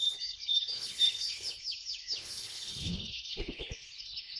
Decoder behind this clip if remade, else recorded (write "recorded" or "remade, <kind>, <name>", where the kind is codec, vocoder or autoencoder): remade, codec, HILCodec